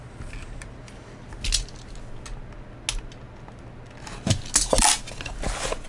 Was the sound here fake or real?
real